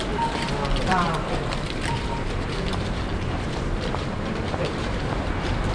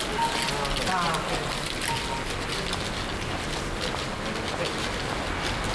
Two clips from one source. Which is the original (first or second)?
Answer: second